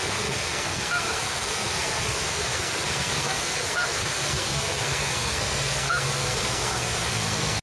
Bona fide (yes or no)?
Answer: no